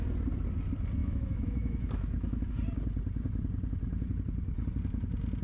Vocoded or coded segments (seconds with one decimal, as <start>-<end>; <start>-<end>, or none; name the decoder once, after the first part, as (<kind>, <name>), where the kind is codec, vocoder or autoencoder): 1.0-2.5 (autoencoder, DAC-VAE)